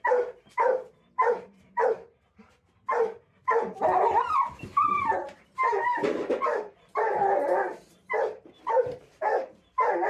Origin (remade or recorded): remade